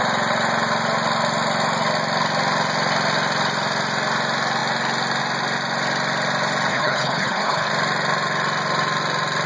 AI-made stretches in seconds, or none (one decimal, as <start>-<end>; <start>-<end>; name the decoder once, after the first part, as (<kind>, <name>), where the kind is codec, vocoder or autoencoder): 6.7-7.7 (codec, HILCodec)